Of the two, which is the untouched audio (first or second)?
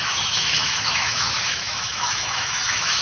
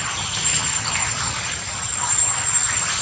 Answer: second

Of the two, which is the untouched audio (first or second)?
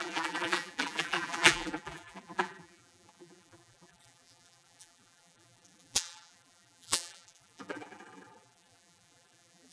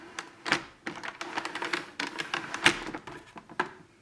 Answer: second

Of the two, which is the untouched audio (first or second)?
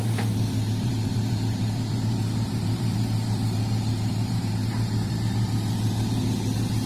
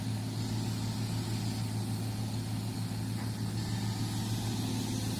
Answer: second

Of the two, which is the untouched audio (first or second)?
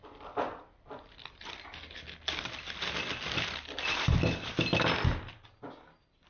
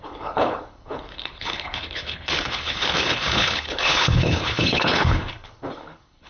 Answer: first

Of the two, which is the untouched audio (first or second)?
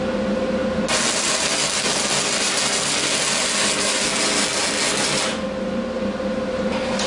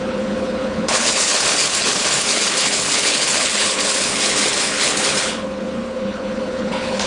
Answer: first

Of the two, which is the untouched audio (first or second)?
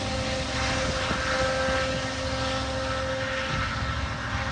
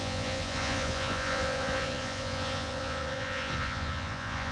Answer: first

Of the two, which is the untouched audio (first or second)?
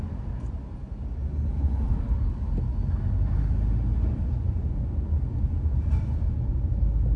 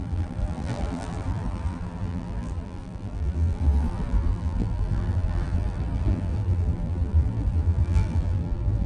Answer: first